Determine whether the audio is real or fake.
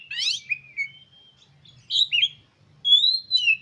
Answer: real